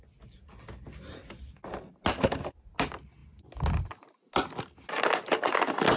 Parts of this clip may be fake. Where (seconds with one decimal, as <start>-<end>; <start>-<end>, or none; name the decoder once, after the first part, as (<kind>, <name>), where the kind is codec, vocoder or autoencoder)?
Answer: none